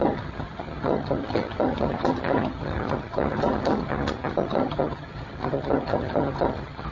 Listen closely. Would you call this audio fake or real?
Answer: fake